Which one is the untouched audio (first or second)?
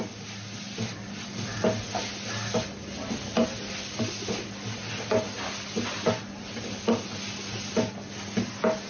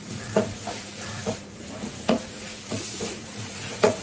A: first